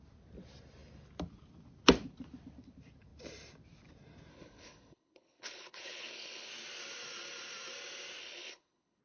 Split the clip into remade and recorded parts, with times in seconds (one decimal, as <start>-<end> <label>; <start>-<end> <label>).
0.0-4.3 recorded; 4.3-6.5 remade; 6.5-8.2 recorded; 8.2-9.0 remade